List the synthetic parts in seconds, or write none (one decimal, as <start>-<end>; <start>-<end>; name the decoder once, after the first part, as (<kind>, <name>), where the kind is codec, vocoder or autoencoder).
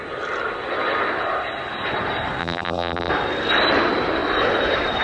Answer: 2.4-3.1 (vocoder, BigVGAN v2)